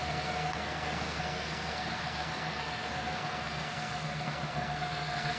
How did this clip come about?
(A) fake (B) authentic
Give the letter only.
A